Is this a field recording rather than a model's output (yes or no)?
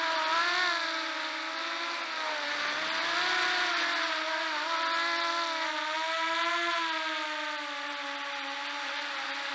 yes